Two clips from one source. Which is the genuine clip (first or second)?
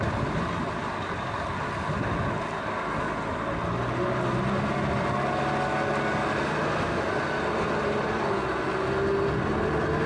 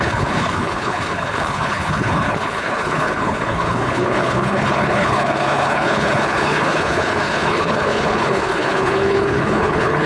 first